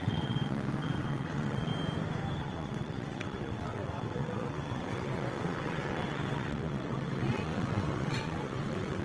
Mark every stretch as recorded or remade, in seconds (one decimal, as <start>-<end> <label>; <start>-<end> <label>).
0.0-1.7 remade; 1.7-2.4 recorded; 2.4-9.0 remade